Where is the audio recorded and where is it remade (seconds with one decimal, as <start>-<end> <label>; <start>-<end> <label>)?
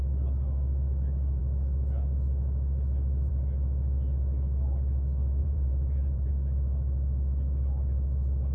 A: 0.0-5.4 recorded; 5.4-6.3 remade; 6.3-8.5 recorded